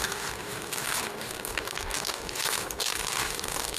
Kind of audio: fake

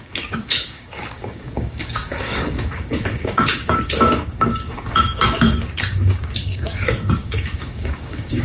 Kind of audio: fake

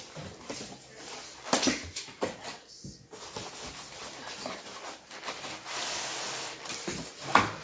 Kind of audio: real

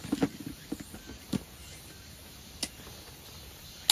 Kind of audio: real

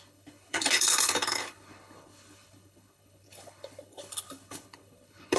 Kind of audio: fake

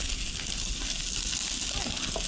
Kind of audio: real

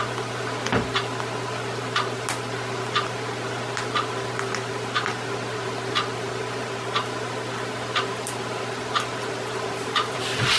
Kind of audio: real